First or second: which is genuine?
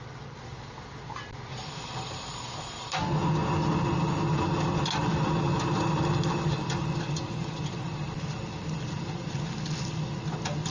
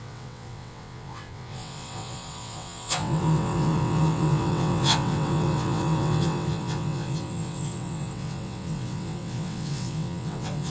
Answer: first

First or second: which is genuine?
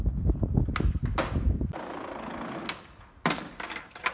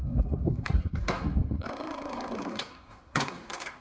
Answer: first